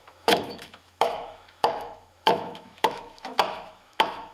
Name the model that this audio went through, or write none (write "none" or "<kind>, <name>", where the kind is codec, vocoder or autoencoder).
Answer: autoencoder, DAC-VAE